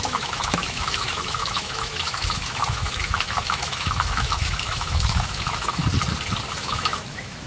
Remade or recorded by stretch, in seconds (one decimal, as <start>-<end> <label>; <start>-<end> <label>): 0.0-5.8 remade; 5.8-6.6 recorded; 6.6-7.5 remade